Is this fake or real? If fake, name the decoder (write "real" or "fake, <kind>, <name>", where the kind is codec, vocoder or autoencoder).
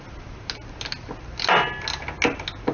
real